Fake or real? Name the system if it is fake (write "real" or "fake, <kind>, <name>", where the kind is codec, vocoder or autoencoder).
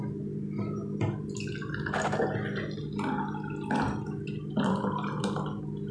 real